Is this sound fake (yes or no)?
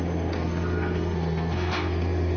yes